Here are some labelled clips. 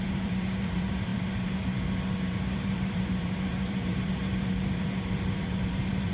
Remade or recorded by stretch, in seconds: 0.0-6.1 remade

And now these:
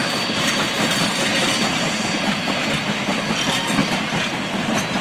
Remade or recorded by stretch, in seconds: 0.0-3.0 remade; 3.0-3.8 recorded; 3.8-5.0 remade